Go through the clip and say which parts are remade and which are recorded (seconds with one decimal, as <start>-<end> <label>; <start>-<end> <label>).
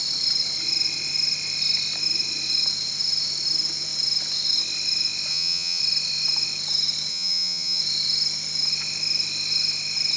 0.0-5.3 recorded; 5.3-5.8 remade; 5.8-7.1 recorded; 7.1-7.8 remade; 7.8-10.2 recorded